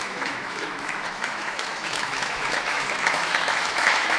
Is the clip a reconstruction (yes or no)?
yes